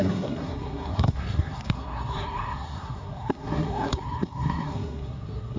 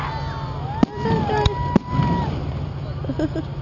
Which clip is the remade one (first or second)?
first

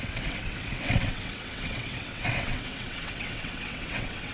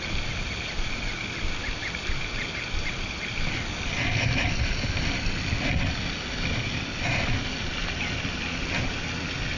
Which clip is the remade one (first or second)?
first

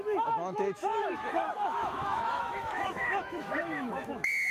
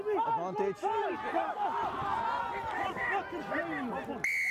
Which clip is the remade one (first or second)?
first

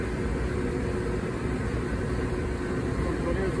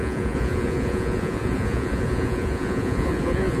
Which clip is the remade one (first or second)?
second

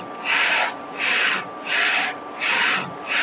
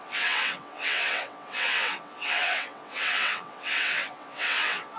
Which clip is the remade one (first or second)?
second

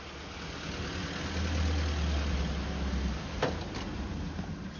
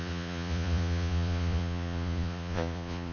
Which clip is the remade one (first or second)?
second